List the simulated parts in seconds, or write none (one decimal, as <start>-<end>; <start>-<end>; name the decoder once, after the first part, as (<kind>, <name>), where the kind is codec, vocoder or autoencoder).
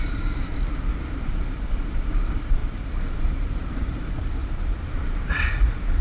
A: 0.0-0.5 (vocoder, BigVGAN v2); 1.3-4.4; 5.2-6.0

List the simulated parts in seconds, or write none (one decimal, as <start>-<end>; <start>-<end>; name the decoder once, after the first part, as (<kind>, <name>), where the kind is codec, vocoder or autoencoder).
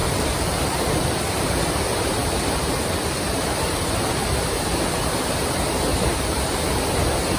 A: 0.0-4.4 (vocoder, BigVGAN v2); 5.9-6.8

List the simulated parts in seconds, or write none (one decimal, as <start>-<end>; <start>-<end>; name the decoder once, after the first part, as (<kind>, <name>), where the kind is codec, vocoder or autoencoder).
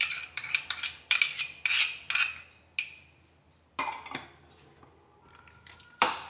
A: 0.0-1.7 (vocoder, BigVGAN v2); 5.5-6.3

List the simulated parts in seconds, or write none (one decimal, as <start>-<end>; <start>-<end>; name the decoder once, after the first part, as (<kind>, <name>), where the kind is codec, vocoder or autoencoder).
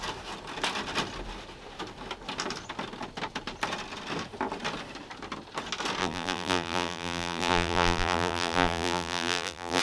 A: 6.0-9.8 (vocoder, BigVGAN v2)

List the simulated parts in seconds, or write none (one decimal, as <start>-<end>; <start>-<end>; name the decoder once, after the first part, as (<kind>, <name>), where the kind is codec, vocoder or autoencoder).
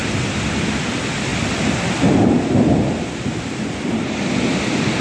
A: 0.0-0.8 (vocoder, BigVGAN v2); 1.3-4.3